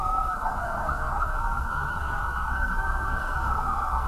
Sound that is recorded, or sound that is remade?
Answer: remade